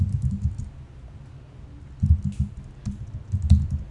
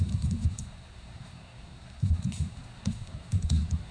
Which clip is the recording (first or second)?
first